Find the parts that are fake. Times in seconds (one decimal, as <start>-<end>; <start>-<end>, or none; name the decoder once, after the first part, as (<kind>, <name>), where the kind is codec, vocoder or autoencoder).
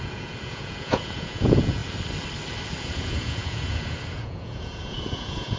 0.0-1.8 (vocoder, Vocos); 2.8-5.6